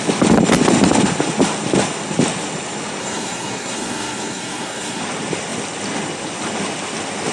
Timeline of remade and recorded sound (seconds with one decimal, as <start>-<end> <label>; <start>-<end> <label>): 0.0-3.0 recorded; 3.0-5.0 remade; 5.0-7.3 recorded